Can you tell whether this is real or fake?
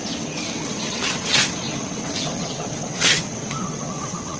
fake